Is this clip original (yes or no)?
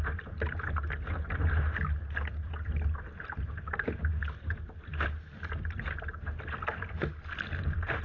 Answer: yes